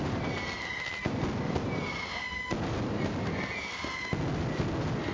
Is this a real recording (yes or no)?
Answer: yes